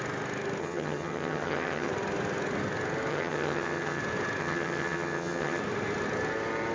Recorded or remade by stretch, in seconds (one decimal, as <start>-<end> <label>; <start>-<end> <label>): 0.0-0.6 recorded; 0.6-1.9 remade; 1.9-3.1 recorded; 3.1-4.0 remade; 4.0-4.4 recorded; 4.4-5.6 remade; 5.6-6.7 recorded